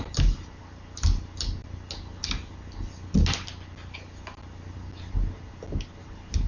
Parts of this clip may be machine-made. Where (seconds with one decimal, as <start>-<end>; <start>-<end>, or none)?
none